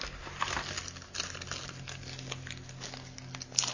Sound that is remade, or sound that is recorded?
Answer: recorded